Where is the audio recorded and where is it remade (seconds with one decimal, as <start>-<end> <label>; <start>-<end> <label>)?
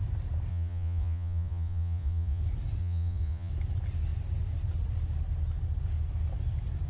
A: 0.0-0.5 recorded; 0.5-2.4 remade; 2.4-2.8 recorded; 2.8-3.5 remade; 3.5-6.9 recorded